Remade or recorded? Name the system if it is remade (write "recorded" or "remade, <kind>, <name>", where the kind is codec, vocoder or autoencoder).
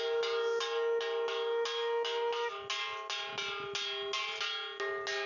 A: recorded